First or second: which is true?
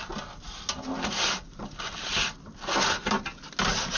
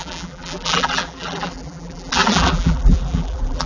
first